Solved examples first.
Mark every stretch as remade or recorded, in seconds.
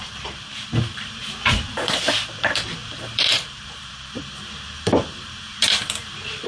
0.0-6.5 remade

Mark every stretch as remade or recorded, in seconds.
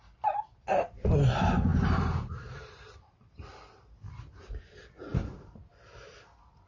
0.0-1.7 recorded; 1.7-3.0 remade; 3.0-6.7 recorded